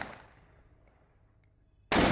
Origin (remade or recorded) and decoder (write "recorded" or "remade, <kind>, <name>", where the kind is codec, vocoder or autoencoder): recorded